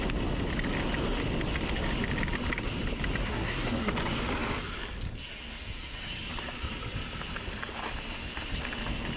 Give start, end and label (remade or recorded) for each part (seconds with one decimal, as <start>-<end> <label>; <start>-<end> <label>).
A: 0.0-3.2 recorded; 3.2-3.9 remade; 3.9-9.2 recorded